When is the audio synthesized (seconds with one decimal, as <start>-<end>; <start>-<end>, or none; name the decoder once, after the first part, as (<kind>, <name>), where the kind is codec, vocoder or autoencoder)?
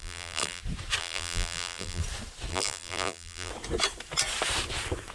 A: 0.0-0.6 (vocoder, BigVGAN v2); 1.0-2.0; 2.5-3.5